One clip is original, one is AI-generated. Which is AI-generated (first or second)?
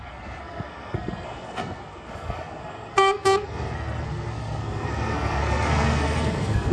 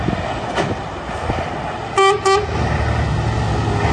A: first